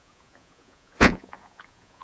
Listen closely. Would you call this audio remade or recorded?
remade